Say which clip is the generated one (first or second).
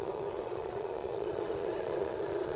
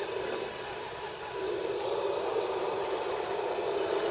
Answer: first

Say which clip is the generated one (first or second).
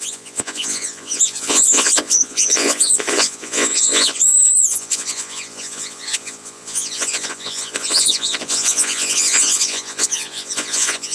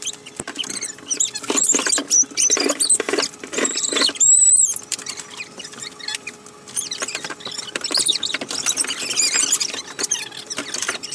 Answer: first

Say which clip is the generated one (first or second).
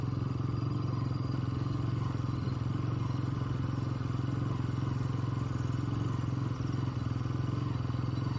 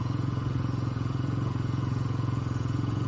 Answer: second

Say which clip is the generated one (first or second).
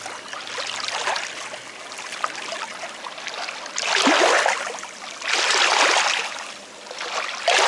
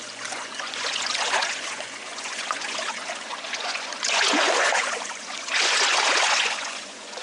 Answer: second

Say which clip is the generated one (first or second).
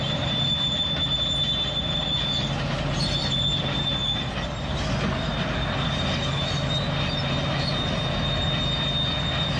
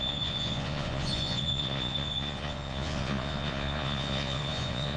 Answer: second